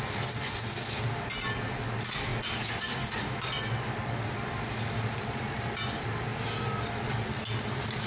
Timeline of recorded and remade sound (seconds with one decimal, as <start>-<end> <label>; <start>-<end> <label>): 0.0-8.1 recorded